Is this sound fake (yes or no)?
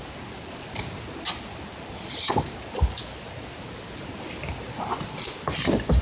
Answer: no